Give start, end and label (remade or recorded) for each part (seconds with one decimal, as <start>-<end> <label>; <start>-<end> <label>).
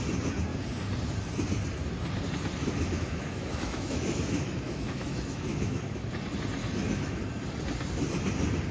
0.0-2.6 recorded; 2.6-6.1 remade; 6.1-6.6 recorded; 6.6-7.2 remade; 7.2-8.7 recorded